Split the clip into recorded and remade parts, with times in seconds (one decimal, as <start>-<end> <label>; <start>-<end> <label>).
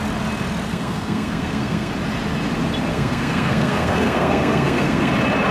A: 0.0-0.7 recorded; 0.7-1.9 remade; 1.9-2.9 recorded; 2.9-5.1 remade; 5.1-5.5 recorded